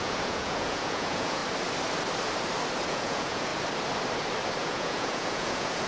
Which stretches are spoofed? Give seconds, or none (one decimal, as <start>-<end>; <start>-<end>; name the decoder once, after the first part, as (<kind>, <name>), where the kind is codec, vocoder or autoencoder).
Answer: 0.0-1.4 (vocoder, Vocos); 2.9-3.5; 4.6-5.9